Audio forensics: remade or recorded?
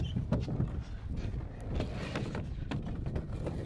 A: recorded